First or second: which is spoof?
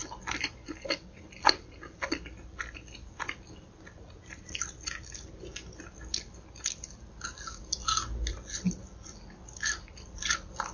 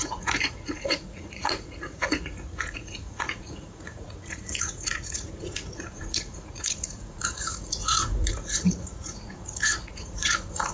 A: second